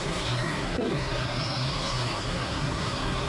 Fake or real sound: fake